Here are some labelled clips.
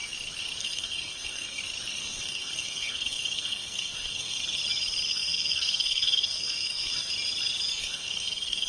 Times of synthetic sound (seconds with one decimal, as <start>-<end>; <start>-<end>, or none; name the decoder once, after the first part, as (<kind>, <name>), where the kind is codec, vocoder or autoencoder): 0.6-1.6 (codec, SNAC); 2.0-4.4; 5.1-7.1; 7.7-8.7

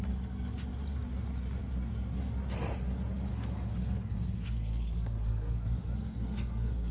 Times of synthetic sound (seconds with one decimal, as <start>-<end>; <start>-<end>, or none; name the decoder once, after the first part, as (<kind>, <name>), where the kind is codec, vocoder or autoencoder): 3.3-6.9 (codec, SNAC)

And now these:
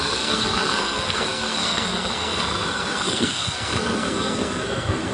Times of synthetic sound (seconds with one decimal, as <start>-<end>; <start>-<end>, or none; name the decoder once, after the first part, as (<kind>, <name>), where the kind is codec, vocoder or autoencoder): 0.0-5.1 (codec, SNAC)